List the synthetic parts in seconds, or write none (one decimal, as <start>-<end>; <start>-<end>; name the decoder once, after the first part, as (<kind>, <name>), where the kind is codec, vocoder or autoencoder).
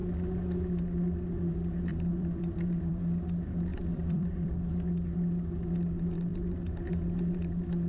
1.9-2.9 (vocoder, BigVGAN v2); 3.7-4.7